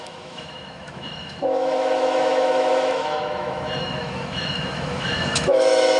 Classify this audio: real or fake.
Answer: fake